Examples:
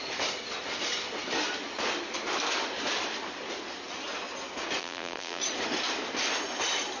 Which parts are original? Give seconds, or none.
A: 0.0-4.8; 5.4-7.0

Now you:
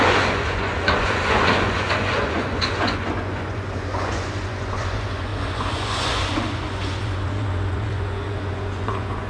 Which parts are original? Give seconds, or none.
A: none

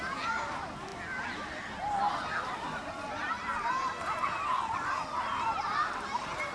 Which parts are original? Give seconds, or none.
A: 0.0-6.5

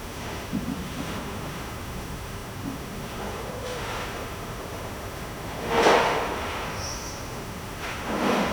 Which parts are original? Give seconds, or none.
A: none

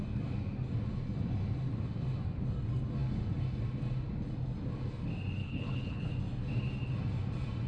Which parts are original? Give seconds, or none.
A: 0.0-5.4; 6.1-7.7

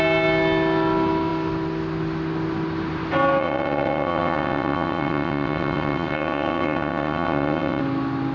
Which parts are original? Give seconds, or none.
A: 0.0-3.4; 7.8-8.3

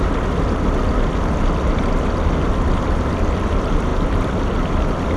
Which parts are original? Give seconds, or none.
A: 0.0-5.2

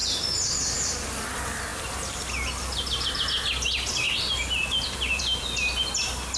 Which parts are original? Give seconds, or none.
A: 0.0-6.4